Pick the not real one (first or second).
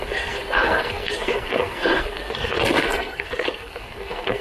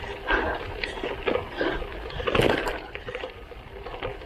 first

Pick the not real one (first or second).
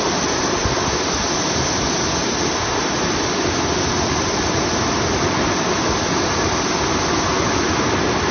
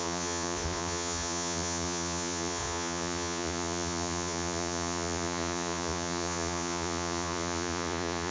second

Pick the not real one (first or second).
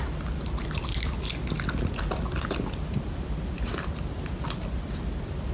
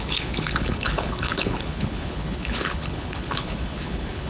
second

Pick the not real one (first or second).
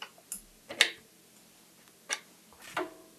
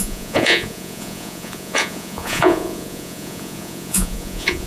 second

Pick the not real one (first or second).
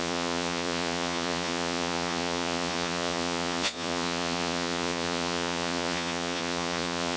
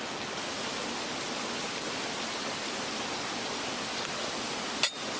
first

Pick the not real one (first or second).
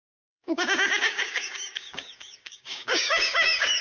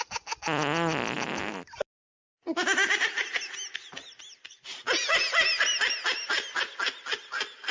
first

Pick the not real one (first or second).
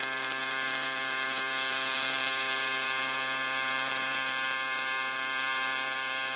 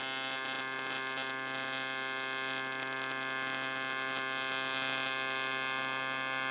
first